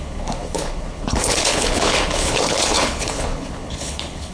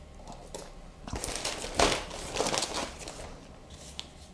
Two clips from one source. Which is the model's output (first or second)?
first